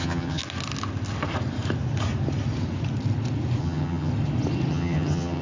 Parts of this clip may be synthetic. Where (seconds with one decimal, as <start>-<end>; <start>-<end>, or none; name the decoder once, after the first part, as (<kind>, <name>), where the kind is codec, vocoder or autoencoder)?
0.0-0.4 (vocoder, HiFi-GAN); 3.6-4.1; 4.7-5.4